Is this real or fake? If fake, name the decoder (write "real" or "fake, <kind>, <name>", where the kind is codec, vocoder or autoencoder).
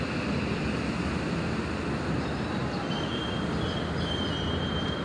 fake, vocoder, BigVGAN v2